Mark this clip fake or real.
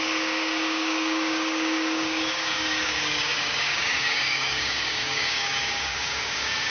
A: fake